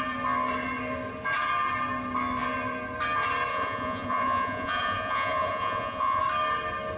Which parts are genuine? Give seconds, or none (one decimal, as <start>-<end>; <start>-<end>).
0.0-3.5; 6.2-7.0